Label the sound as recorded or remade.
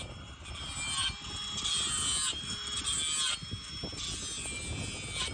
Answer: recorded